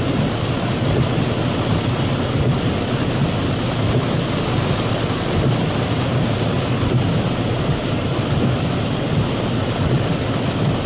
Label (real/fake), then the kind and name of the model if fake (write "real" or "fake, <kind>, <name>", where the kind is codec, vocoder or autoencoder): real